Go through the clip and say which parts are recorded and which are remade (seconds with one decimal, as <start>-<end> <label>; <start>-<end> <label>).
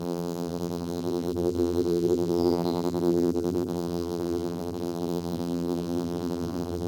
0.0-6.9 remade